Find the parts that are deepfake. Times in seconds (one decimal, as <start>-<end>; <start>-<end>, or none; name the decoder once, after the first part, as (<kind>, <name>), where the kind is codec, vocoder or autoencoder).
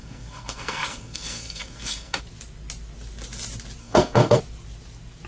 0.0-2.2 (codec, SNAC); 3.8-4.4